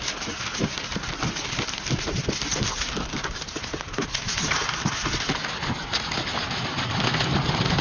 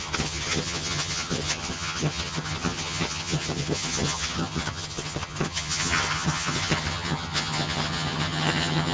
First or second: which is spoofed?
second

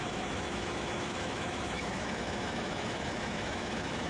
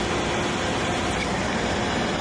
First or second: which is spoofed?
first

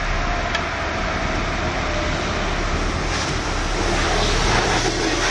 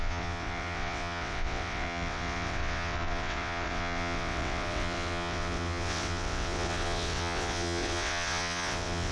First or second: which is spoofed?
second